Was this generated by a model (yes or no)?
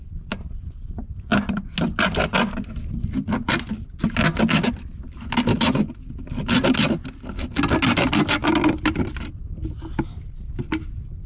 no